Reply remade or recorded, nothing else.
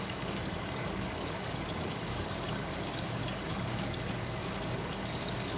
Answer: remade